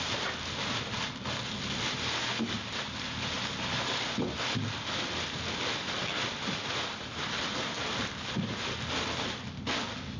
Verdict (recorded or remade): recorded